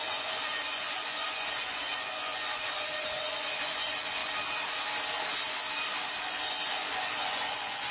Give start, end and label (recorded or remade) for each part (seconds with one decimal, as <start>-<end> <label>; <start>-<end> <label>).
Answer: 0.0-4.2 remade; 4.2-6.2 recorded; 6.2-7.9 remade